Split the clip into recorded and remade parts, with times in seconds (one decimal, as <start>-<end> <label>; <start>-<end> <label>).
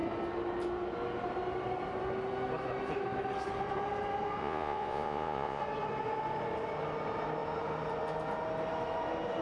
0.0-4.4 recorded; 4.4-5.6 remade; 5.6-9.4 recorded